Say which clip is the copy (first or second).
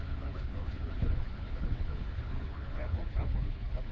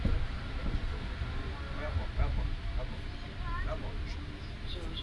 first